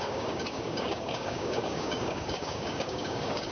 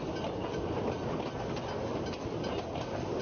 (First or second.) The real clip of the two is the second